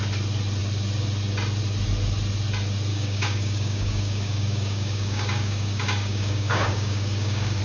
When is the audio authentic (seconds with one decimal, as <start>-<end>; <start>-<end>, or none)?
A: 0.0-2.9